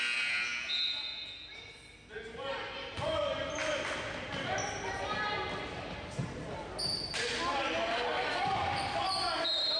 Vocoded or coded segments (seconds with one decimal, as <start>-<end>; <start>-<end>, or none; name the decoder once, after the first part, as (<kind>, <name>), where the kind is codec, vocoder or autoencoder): none